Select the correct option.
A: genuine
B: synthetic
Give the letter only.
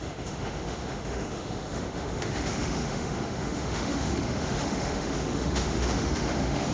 B